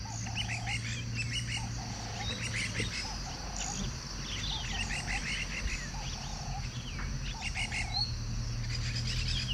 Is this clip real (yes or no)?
yes